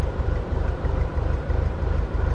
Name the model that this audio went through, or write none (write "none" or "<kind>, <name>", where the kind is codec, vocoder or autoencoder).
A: vocoder, BigVGAN v2